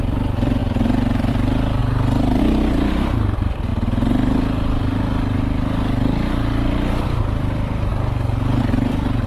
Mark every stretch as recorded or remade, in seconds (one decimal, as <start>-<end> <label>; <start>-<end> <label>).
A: 0.0-1.8 remade; 1.8-2.4 recorded; 2.4-3.7 remade; 3.7-6.9 recorded; 6.9-7.9 remade; 7.9-8.6 recorded; 8.6-9.3 remade